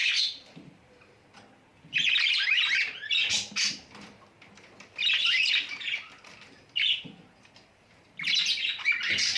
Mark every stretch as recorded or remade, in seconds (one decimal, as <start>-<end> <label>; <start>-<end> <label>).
0.0-0.9 remade; 0.9-9.4 recorded